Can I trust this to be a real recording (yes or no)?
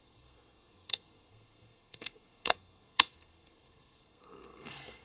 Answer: no